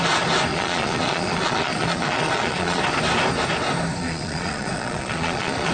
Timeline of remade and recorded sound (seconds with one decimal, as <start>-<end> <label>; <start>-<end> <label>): 0.0-0.5 recorded; 0.5-2.8 remade; 2.8-4.0 recorded; 4.0-5.7 remade